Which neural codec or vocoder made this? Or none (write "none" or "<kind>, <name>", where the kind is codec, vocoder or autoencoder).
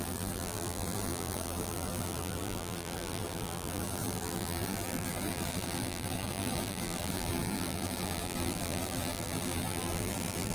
vocoder, BigVGAN v2